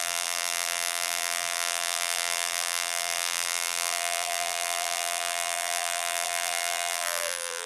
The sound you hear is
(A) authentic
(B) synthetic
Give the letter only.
B